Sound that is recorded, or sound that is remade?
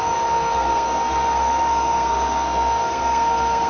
remade